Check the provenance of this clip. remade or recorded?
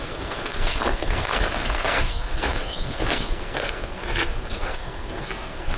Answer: remade